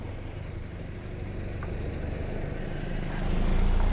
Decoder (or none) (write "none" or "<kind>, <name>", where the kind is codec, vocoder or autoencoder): vocoder, BigVGAN v2